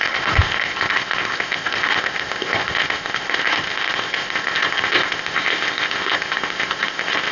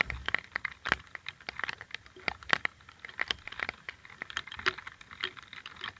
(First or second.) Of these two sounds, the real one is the second